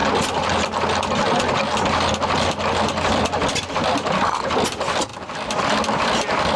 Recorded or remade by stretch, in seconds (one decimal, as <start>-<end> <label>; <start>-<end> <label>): 0.0-6.6 recorded